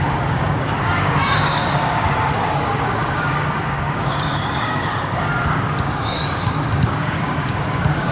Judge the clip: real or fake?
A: fake